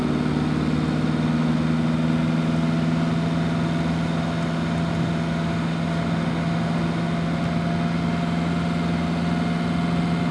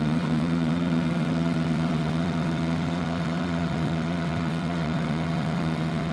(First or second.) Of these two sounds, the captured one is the first